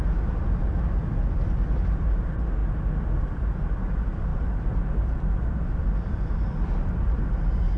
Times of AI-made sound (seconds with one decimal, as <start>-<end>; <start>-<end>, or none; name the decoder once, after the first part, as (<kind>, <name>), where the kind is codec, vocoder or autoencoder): 4.3-5.8 (vocoder, BigVGAN v2)

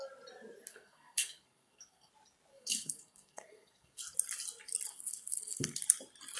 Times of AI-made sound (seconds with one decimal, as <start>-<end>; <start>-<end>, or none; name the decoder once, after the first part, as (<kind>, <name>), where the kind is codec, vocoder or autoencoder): 0.7-2.1 (codec, SNAC); 2.5-4.0; 4.9-5.8

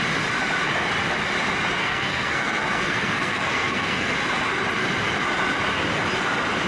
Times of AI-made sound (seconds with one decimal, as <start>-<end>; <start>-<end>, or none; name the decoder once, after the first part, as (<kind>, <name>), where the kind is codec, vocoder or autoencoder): 1.8-4.1 (codec, SNAC)

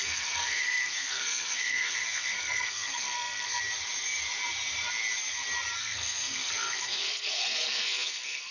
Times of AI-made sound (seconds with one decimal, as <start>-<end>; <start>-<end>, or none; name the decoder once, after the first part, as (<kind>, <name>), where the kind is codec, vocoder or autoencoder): 0.0-3.6 (codec, SNAC); 5.8-8.5

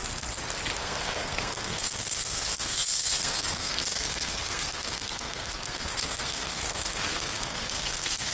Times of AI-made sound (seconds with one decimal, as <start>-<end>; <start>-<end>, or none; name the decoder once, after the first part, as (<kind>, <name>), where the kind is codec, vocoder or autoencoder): 0.8-8.3 (codec, SNAC)

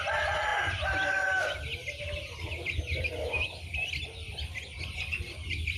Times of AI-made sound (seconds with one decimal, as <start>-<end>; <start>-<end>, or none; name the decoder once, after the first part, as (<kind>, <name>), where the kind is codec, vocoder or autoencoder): none

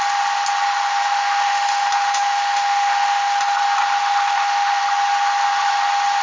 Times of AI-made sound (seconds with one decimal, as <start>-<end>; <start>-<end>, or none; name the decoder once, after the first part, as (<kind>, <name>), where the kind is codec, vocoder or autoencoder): 1.0-3.6 (autoencoder, DAC-VAE); 4.0-4.8

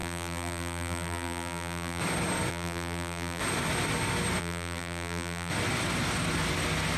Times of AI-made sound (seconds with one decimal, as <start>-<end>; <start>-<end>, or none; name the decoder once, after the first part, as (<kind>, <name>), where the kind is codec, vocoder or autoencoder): 0.0-2.0 (vocoder, BigVGAN v2); 2.5-3.4; 4.4-5.5